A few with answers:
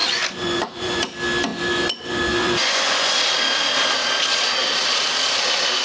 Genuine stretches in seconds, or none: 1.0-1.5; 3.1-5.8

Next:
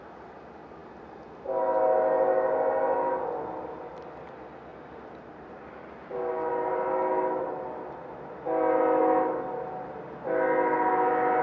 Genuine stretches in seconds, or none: 0.0-4.7; 6.3-11.4

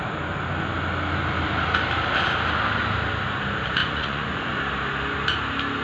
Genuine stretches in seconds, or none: 0.0-3.8; 4.6-5.8

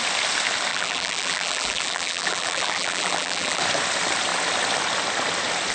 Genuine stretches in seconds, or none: 0.0-0.7; 3.6-5.7

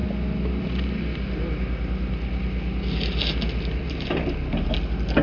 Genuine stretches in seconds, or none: 0.0-5.2

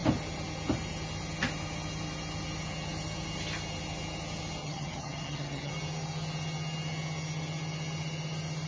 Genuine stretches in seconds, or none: 0.0-4.6; 5.7-8.7

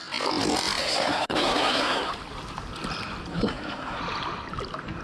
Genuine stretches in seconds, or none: 0.0-0.8; 2.1-3.3; 4.0-5.0

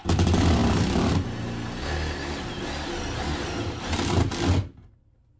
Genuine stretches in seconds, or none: 0.0-5.4